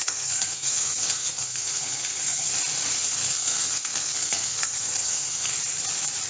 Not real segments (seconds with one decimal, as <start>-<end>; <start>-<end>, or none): 0.0-2.5; 3.0-5.5

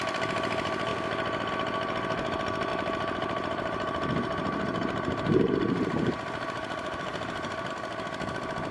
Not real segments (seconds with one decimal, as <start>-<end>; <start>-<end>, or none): 2.7-7.7

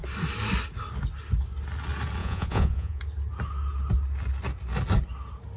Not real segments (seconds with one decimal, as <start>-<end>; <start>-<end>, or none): 2.2-3.0

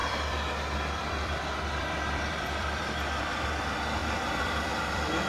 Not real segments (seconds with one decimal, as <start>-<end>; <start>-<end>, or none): 0.0-5.3

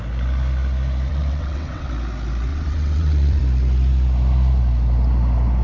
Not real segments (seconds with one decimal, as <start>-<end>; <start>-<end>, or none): 1.1-1.9; 2.5-3.4

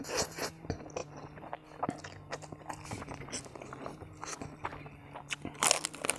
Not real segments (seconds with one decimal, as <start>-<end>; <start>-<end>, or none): none

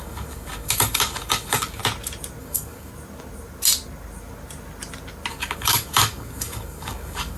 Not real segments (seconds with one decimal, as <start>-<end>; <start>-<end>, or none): 0.0-1.8; 2.4-2.9; 5.3-7.4